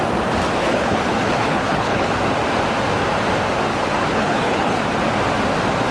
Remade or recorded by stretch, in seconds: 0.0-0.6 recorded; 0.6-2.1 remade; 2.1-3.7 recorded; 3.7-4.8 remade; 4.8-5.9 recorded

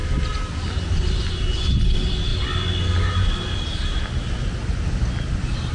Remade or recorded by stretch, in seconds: 0.0-5.7 recorded

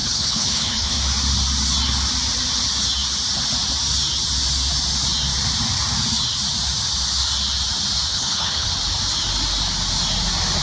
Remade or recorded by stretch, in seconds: 0.0-1.0 remade; 1.0-8.1 recorded; 8.1-8.7 remade; 8.7-10.6 recorded